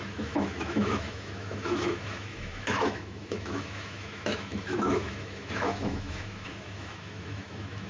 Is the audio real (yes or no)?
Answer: no